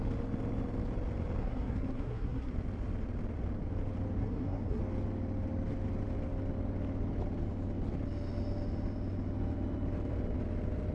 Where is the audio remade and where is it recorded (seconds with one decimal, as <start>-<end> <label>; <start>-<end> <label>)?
0.0-1.4 recorded; 1.4-2.5 remade; 2.5-4.2 recorded; 4.2-4.8 remade; 4.8-10.9 recorded